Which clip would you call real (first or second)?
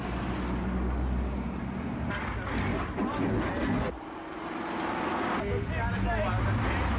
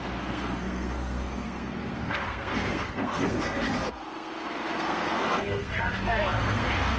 first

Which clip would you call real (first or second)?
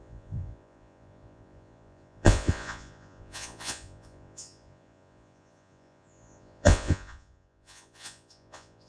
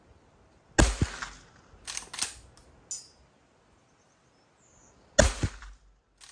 second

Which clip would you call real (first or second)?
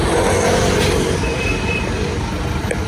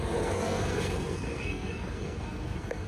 first